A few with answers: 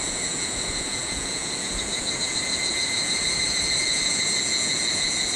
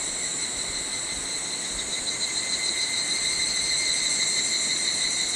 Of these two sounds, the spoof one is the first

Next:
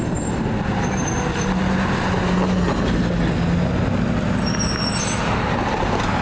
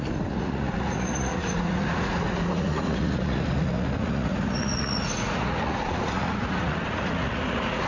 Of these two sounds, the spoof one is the second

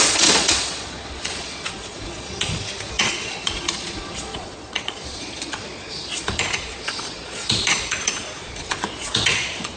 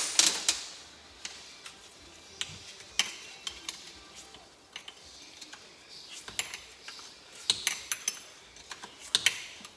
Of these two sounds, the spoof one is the first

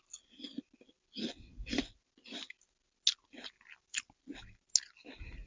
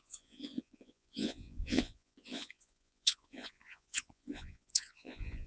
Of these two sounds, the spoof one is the second